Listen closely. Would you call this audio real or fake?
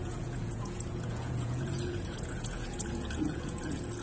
fake